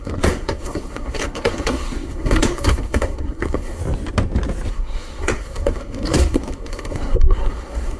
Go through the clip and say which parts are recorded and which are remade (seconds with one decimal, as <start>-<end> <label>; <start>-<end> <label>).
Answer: 0.0-3.8 remade; 3.8-4.7 recorded; 4.7-8.0 remade